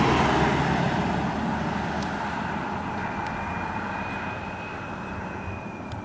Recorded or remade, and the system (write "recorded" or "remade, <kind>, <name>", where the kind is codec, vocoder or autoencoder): recorded